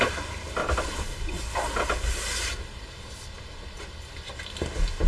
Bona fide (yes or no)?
yes